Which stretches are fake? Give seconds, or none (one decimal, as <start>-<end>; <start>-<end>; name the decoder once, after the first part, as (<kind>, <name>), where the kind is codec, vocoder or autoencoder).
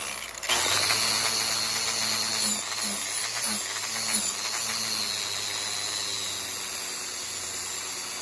none